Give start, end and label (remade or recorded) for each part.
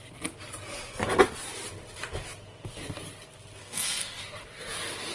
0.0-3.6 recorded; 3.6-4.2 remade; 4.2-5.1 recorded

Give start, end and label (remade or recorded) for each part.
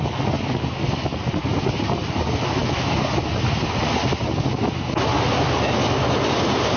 0.0-6.8 recorded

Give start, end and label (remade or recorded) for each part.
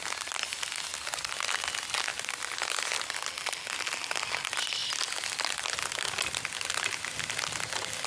0.0-8.1 recorded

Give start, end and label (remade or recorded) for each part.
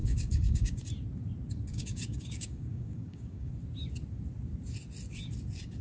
0.0-0.8 remade; 0.8-1.7 recorded; 1.7-3.5 remade; 3.5-5.8 recorded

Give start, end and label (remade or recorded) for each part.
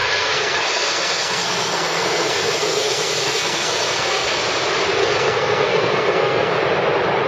0.0-4.4 remade; 4.4-5.0 recorded; 5.0-6.5 remade; 6.5-7.3 recorded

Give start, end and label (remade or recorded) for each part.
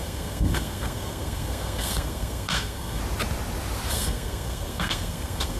0.0-3.0 remade; 3.0-3.9 recorded; 3.9-5.6 remade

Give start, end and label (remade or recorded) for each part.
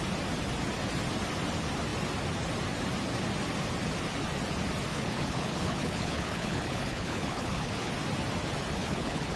0.0-4.9 recorded; 4.9-7.9 remade; 7.9-8.8 recorded; 8.8-9.4 remade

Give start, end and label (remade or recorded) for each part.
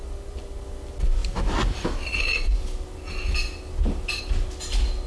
0.0-0.6 remade; 0.6-5.1 recorded